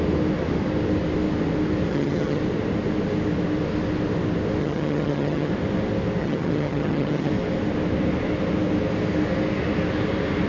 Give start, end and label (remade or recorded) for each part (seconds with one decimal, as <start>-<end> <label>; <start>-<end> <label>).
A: 0.0-1.9 recorded; 1.9-2.4 remade; 2.4-4.6 recorded; 4.6-5.5 remade; 5.5-6.2 recorded; 6.2-7.3 remade; 7.3-10.5 recorded